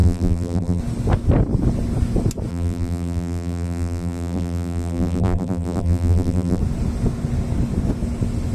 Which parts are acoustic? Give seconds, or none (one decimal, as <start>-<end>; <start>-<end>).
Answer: 0.8-2.5; 6.6-8.5